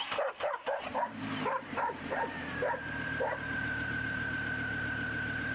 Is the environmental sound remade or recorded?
remade